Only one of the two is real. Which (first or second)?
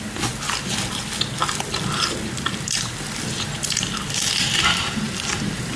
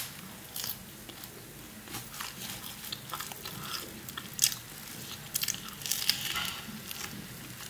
second